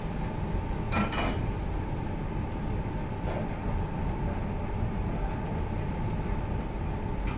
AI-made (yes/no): no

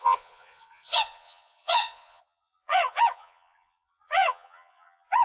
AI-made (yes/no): yes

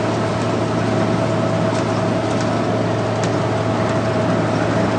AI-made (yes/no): no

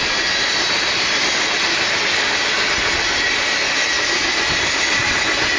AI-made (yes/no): no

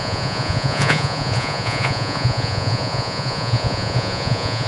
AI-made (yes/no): yes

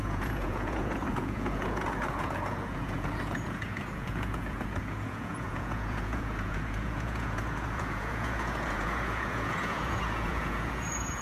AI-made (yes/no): yes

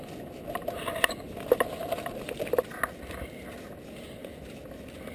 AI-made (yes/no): no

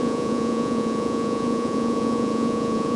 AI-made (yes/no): yes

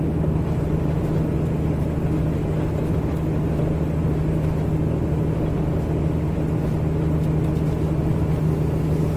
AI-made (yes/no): no